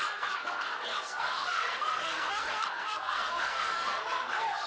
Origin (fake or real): fake